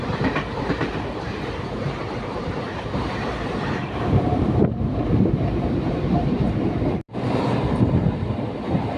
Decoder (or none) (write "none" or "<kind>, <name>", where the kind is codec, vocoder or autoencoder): vocoder, BigVGAN v2